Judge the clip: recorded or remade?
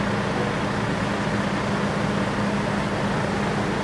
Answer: recorded